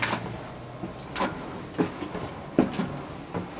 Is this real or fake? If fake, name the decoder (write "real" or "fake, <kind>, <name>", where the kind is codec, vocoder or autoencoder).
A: real